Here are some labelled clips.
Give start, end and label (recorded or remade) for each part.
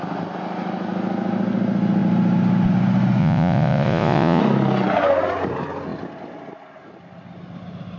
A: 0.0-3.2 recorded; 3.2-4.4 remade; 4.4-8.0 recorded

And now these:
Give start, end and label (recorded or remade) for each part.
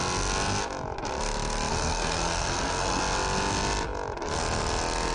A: 0.0-1.7 recorded; 1.7-3.0 remade; 3.0-5.1 recorded